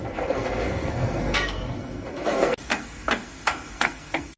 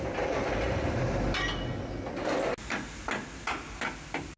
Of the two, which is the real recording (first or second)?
second